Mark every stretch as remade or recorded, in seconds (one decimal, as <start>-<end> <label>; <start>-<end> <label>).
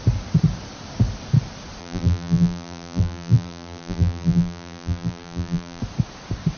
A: 0.0-1.8 recorded; 1.8-5.8 remade; 5.8-6.6 recorded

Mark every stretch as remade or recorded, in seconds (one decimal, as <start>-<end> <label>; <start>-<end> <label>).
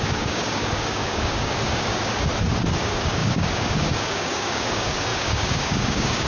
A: 0.0-2.3 remade; 2.3-2.8 recorded; 2.8-6.3 remade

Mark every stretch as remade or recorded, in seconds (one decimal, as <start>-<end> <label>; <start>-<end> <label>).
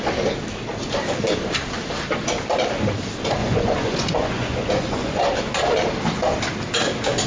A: 0.0-3.4 recorded; 3.4-5.2 remade; 5.2-7.3 recorded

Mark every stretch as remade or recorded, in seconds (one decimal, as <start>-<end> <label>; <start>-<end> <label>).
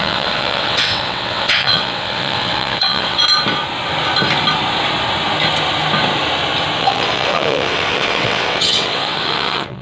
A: 0.0-3.2 remade; 3.2-6.8 recorded; 6.8-9.8 remade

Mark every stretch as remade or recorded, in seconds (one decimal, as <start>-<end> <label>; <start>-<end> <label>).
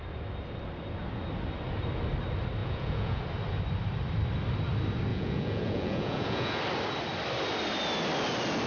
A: 0.0-2.6 recorded; 2.6-3.2 remade; 3.2-5.1 recorded; 5.1-6.6 remade; 6.6-8.7 recorded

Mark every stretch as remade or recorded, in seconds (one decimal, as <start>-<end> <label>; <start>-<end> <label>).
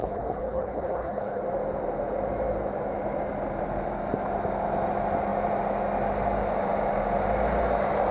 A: 0.0-1.4 remade; 1.4-8.1 recorded